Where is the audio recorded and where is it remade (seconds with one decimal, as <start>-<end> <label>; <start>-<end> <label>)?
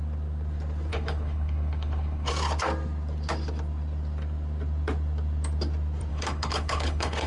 0.0-0.9 recorded; 0.9-2.3 remade; 2.3-6.1 recorded; 6.1-7.3 remade